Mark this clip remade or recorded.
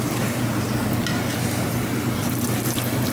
recorded